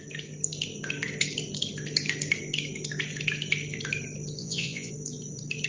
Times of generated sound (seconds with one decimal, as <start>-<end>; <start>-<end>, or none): 4.4-4.9